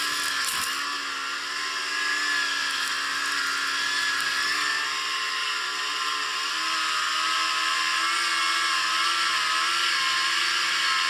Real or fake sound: real